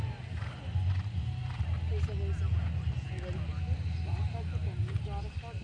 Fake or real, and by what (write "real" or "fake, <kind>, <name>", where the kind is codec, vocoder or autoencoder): real